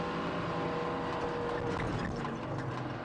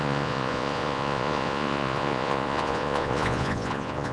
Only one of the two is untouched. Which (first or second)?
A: first